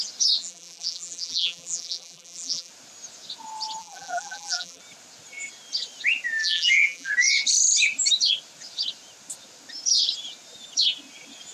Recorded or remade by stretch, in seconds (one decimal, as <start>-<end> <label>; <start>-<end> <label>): 0.0-0.4 recorded; 0.4-2.7 remade; 2.7-3.8 recorded; 3.8-4.8 remade; 4.8-6.4 recorded; 6.4-7.1 remade; 7.1-11.5 recorded